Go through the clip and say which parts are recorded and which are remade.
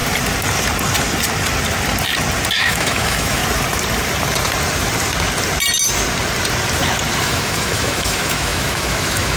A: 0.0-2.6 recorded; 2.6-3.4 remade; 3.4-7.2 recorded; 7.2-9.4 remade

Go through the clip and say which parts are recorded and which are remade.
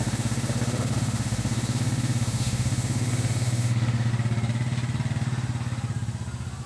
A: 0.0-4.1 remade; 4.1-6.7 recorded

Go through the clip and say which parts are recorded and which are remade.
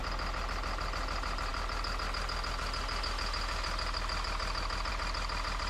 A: 0.0-5.7 recorded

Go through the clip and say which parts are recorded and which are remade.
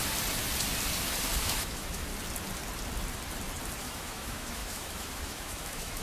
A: 0.0-1.4 recorded; 1.4-2.1 remade; 2.1-3.8 recorded; 3.8-6.0 remade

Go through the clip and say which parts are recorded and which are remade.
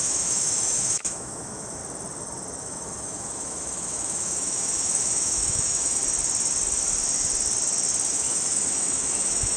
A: 0.0-1.8 remade; 1.8-2.6 recorded; 2.6-6.0 remade; 6.0-8.1 recorded; 8.1-9.6 remade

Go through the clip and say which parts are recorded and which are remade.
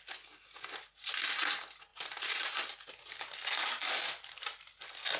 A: 0.0-5.2 recorded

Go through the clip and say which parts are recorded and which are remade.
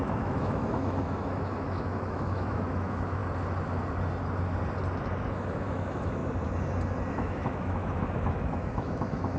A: 0.0-3.2 remade; 3.2-5.3 recorded; 5.3-6.2 remade; 6.2-7.1 recorded; 7.1-9.4 remade